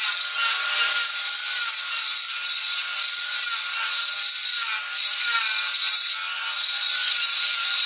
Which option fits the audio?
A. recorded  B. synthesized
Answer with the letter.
A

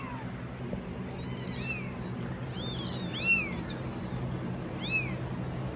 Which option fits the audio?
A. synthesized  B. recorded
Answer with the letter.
B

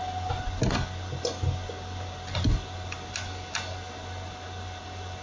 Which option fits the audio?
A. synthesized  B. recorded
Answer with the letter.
B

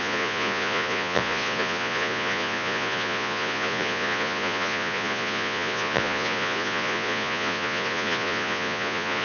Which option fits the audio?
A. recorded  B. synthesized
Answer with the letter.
B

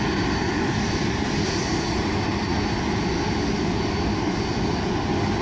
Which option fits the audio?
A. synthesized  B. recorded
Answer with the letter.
B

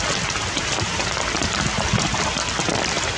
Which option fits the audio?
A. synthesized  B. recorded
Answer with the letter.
B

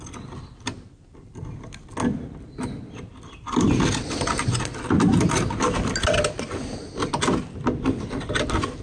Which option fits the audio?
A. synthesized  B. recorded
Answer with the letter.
B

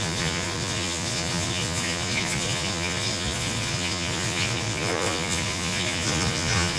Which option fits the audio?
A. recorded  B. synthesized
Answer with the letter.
B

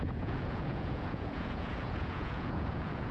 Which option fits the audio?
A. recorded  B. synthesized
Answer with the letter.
B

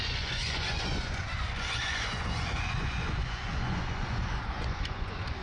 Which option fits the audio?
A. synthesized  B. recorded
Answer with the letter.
A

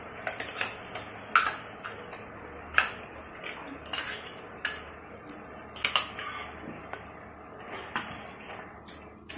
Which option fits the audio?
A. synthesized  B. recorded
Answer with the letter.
B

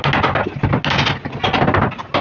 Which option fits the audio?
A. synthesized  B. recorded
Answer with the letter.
B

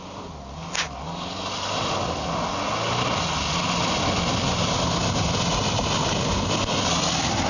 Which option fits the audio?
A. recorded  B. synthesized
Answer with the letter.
A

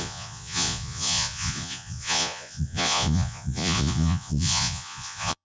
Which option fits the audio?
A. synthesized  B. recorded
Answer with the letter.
A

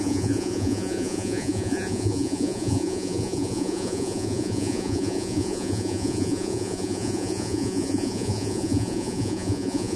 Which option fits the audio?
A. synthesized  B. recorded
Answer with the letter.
A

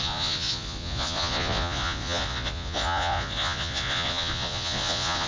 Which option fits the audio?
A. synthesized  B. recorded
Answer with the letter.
A